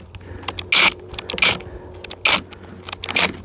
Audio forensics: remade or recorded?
recorded